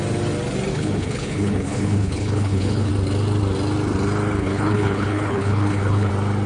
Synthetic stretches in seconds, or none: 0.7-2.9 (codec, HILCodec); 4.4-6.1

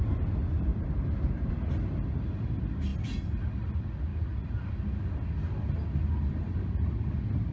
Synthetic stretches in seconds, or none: none

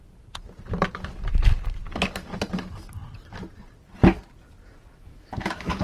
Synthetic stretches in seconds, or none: 5.0-5.8 (autoencoder, DAC-VAE)

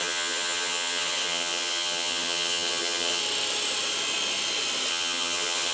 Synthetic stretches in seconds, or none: 0.0-3.2 (vocoder, HiFi-GAN); 4.9-5.7